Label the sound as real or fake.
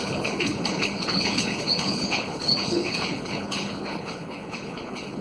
fake